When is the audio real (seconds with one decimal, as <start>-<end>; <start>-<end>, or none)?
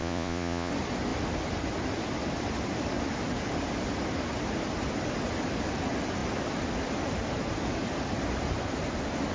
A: 0.7-9.3